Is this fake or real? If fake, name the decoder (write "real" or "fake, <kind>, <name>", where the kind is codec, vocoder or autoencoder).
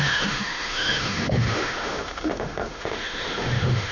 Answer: fake, autoencoder, DAC-VAE